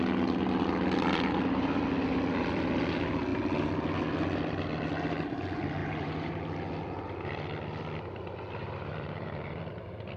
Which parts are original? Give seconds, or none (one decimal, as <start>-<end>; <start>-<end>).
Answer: 0.0-5.8; 6.4-8.6; 9.6-10.2